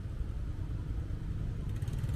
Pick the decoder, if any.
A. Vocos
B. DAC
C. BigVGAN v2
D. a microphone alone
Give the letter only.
D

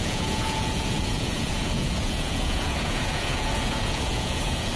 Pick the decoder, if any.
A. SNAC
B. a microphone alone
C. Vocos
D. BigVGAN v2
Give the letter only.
C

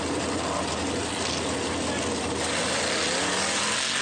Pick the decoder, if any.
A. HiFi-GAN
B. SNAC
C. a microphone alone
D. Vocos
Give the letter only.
C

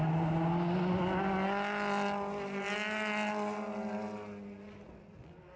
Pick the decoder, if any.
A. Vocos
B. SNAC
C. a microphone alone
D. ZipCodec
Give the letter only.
C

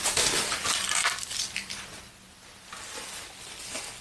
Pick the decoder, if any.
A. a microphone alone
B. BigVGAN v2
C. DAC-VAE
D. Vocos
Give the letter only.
A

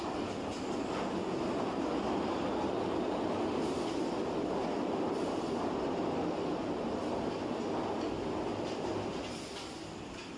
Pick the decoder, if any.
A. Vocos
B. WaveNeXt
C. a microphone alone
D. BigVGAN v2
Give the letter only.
C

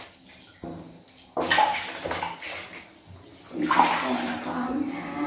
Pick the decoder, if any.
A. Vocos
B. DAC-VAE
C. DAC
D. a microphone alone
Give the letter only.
D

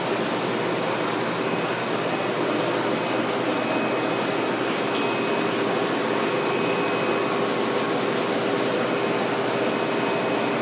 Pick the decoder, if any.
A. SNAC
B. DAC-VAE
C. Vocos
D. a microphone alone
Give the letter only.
D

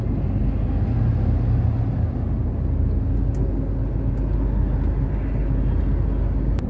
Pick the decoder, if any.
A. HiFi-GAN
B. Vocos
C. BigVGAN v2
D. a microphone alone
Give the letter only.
D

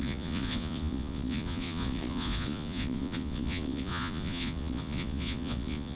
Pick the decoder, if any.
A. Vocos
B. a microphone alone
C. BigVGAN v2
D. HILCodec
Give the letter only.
A